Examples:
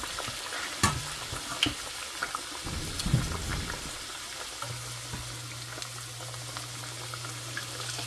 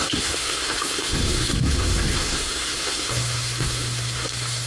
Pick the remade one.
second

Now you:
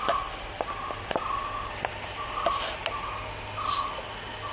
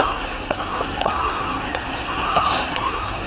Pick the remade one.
second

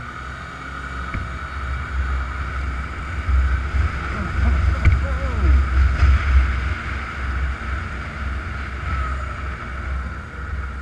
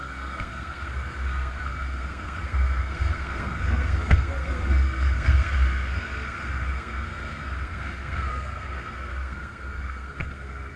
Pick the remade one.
second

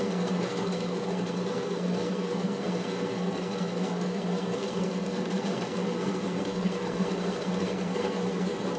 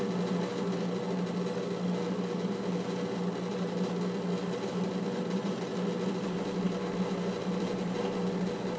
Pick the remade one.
first